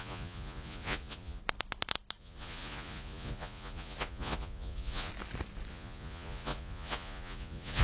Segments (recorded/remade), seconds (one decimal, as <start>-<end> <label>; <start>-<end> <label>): 0.0-1.4 remade; 1.4-2.2 recorded; 2.2-5.1 remade; 5.1-5.7 recorded; 5.7-7.8 remade